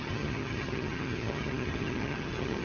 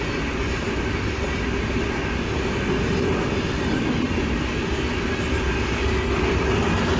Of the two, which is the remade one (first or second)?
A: first